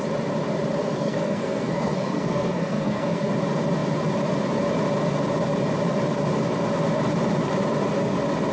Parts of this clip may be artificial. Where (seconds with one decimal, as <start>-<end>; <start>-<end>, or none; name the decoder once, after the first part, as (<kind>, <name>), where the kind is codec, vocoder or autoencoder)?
0.8-3.3 (codec, SNAC)